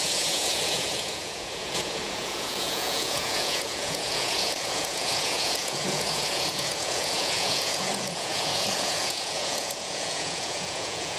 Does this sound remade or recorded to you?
remade